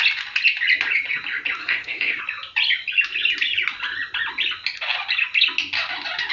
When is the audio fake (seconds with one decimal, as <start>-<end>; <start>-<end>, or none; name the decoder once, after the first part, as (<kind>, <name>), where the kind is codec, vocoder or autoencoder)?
1.6-2.2 (codec, SNAC)